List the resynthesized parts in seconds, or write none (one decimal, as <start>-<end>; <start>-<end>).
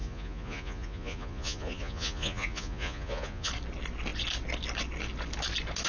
0.0-3.5